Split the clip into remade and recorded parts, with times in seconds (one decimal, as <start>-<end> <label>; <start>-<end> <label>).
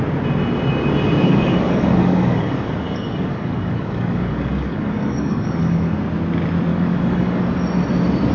0.0-1.2 recorded; 1.2-6.0 remade; 6.0-6.7 recorded; 6.7-7.4 remade; 7.4-8.3 recorded